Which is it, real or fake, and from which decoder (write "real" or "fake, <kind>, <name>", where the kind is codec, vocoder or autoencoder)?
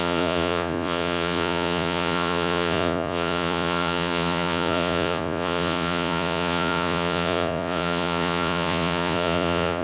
fake, vocoder, Vocos